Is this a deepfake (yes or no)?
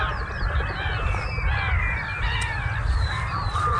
no